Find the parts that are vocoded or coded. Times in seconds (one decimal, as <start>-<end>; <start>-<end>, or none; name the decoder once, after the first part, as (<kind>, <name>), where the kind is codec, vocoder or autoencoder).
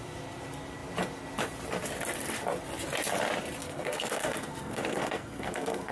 3.6-5.9 (codec, SNAC)